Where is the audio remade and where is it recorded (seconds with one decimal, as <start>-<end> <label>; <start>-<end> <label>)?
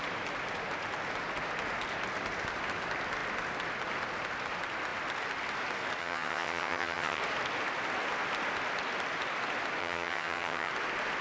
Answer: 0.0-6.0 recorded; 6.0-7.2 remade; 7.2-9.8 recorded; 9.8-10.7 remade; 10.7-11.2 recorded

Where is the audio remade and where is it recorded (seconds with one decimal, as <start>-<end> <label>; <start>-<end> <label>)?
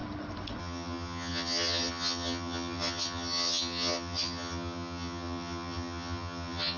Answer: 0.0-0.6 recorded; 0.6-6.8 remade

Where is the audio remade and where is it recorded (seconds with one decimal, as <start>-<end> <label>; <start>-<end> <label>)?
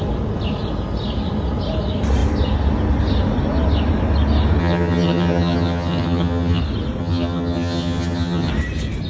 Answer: 0.0-4.6 recorded; 4.6-6.6 remade; 6.6-7.0 recorded; 7.0-8.5 remade; 8.5-9.1 recorded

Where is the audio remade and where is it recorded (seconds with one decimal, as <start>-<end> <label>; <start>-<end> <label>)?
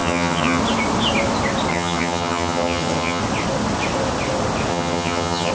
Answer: 0.0-0.6 remade; 0.6-1.7 recorded; 1.7-3.2 remade; 3.2-4.7 recorded; 4.7-5.5 remade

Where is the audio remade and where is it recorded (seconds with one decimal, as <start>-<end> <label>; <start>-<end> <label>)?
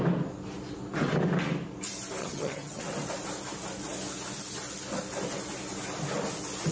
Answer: 0.0-2.2 recorded; 2.2-2.8 remade; 2.8-6.7 recorded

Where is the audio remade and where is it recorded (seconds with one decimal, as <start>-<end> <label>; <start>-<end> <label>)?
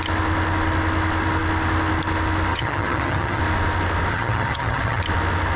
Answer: 0.0-2.5 recorded; 2.5-3.4 remade; 3.4-4.1 recorded; 4.1-5.0 remade; 5.0-5.6 recorded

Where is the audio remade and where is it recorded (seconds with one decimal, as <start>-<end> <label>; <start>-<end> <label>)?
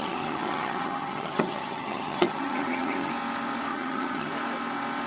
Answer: 0.0-3.1 remade; 3.1-3.7 recorded; 3.7-4.3 remade; 4.3-5.1 recorded